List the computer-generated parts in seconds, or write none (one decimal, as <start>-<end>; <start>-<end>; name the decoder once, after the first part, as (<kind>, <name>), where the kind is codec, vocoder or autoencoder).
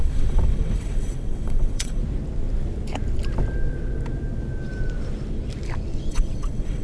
0.0-2.0 (vocoder, WaveNeXt); 6.1-6.8